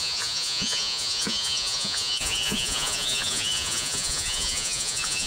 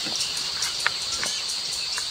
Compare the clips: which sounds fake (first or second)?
first